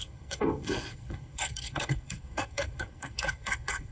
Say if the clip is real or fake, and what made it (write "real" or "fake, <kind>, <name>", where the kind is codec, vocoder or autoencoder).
fake, codec, SNAC